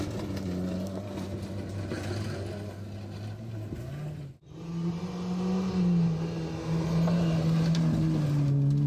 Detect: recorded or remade recorded